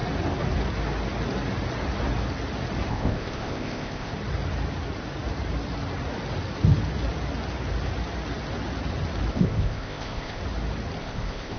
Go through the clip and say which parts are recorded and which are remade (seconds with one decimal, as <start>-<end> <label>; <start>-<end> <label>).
0.0-2.9 recorded; 2.9-4.1 remade; 4.1-9.3 recorded; 9.3-10.4 remade; 10.4-11.0 recorded; 11.0-11.6 remade